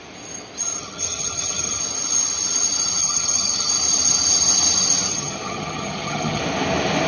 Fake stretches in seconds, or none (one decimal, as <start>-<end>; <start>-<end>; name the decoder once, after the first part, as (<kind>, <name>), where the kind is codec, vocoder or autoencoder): 0.8-1.8 (vocoder, HiFi-GAN); 3.0-3.7; 5.1-6.4

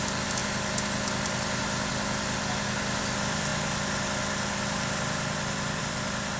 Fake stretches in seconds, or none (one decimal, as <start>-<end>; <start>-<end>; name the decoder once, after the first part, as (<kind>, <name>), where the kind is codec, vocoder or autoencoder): none

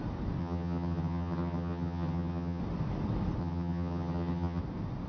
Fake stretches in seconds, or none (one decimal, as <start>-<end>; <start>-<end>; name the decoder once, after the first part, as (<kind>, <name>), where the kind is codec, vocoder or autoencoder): 0.4-2.6 (vocoder, HiFi-GAN); 3.4-4.6